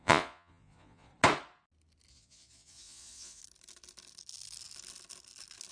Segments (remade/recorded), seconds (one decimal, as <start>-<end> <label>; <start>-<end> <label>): 0.0-1.1 remade; 1.1-2.1 recorded; 2.1-3.4 remade; 3.4-5.7 recorded

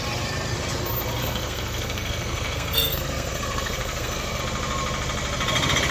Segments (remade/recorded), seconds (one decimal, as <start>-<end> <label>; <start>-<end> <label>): 0.0-1.2 recorded; 1.2-4.4 remade; 4.4-5.9 recorded

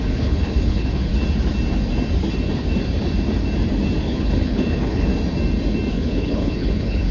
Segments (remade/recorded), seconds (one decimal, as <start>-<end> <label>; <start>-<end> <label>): 0.0-1.1 remade; 1.1-4.0 recorded; 4.0-5.1 remade; 5.1-5.9 recorded; 5.9-7.1 remade

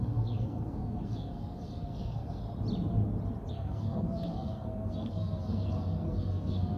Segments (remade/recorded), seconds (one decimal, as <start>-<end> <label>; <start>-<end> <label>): 0.0-2.4 remade; 2.4-3.5 recorded; 3.5-6.8 remade

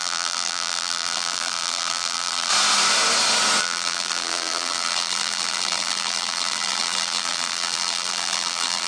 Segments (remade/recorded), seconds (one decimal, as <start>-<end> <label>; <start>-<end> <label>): 0.0-2.5 remade; 2.5-3.6 recorded; 3.6-8.9 remade